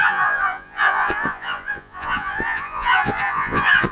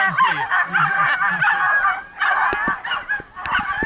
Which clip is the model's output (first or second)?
first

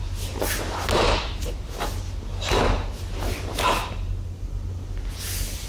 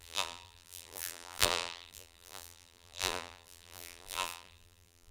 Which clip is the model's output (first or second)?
second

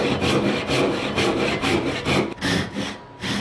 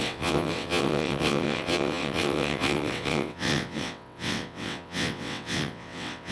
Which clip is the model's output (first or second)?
second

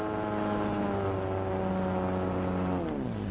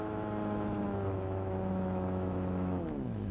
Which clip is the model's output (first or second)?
second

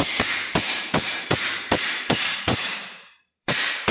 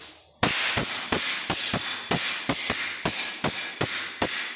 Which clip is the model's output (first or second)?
first